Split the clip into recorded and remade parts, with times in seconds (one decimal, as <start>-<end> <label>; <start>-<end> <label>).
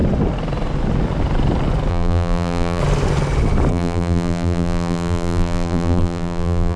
0.0-1.9 recorded; 1.9-2.8 remade; 2.8-3.7 recorded; 3.7-6.8 remade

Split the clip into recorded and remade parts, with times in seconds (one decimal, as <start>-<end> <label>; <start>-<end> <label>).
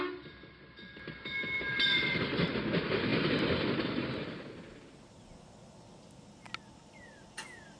0.0-7.8 recorded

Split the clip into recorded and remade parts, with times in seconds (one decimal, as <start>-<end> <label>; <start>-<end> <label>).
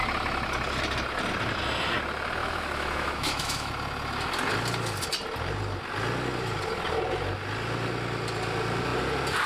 0.0-2.4 recorded; 2.4-3.7 remade; 3.7-9.5 recorded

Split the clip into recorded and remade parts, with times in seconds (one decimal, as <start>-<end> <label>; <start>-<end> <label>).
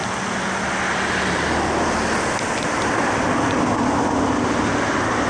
0.0-5.3 recorded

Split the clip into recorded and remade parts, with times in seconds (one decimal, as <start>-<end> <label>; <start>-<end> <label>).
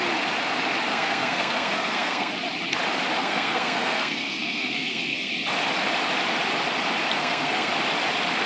0.0-0.9 recorded; 0.9-2.3 remade; 2.3-3.2 recorded; 3.2-5.3 remade; 5.3-7.2 recorded; 7.2-7.7 remade; 7.7-8.5 recorded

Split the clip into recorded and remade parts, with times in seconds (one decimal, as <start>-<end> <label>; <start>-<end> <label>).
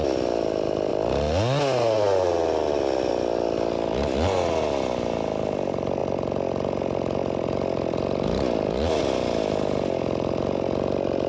0.0-11.3 recorded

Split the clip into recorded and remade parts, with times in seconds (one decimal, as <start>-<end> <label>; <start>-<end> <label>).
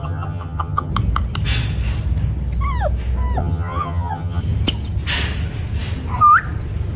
0.0-0.9 remade; 0.9-3.4 recorded; 3.4-4.4 remade; 4.4-7.0 recorded